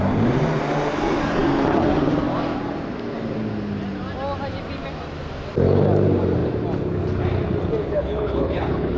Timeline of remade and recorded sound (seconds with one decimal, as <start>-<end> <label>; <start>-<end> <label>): 0.0-7.8 recorded; 7.8-9.0 remade